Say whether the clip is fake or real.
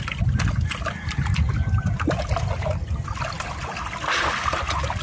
real